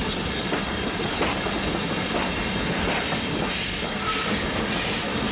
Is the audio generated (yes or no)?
no